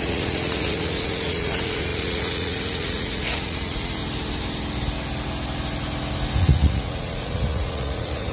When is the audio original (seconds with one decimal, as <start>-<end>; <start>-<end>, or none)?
4.0-6.4